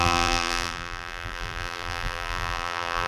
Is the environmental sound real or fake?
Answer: fake